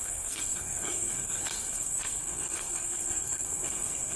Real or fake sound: fake